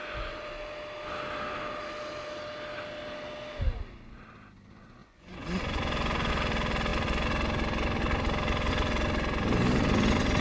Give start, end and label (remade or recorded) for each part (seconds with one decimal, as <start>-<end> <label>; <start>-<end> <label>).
0.0-0.5 remade; 0.5-5.0 recorded; 5.0-6.3 remade; 6.3-10.4 recorded